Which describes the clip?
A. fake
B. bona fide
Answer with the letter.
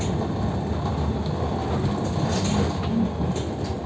B